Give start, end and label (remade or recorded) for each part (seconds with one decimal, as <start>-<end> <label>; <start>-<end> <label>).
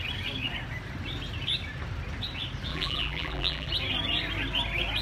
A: 0.0-2.7 recorded; 2.7-3.7 remade; 3.7-5.0 recorded